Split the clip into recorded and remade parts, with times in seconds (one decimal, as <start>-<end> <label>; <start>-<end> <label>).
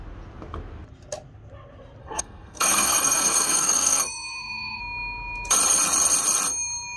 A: 0.0-2.0 recorded; 2.0-4.8 remade; 4.8-7.0 recorded